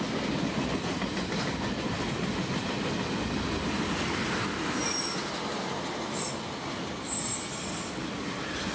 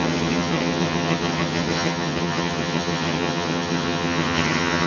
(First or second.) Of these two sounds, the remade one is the second